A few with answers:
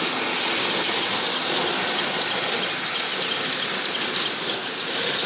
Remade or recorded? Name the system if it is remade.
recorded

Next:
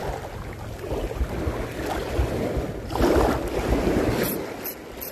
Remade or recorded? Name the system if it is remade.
recorded